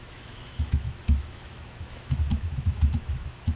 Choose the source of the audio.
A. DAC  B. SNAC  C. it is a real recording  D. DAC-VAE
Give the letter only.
D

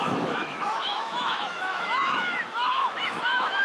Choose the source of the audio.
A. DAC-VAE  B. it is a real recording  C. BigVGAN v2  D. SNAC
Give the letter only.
A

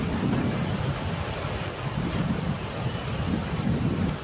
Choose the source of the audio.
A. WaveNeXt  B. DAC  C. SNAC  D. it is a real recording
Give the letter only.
D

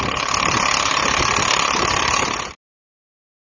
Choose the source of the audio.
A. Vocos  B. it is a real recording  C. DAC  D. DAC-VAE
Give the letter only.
B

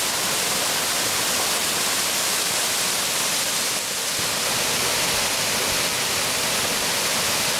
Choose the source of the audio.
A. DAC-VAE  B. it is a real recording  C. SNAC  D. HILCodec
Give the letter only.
B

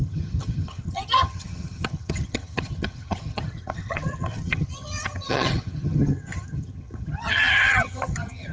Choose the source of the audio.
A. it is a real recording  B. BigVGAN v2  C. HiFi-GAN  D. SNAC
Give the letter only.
C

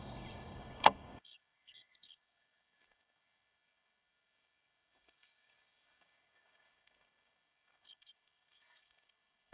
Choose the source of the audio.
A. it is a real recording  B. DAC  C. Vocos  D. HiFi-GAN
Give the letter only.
B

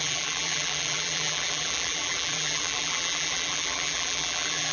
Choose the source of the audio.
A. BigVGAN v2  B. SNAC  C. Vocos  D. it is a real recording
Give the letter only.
A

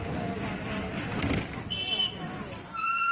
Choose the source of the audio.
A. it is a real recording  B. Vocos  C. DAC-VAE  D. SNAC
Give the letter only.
A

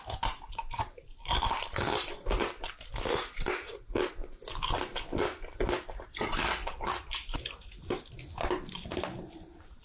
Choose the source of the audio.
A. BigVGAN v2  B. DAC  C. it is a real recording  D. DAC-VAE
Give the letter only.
C